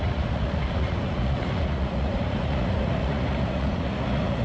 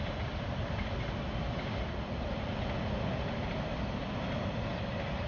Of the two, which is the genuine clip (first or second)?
second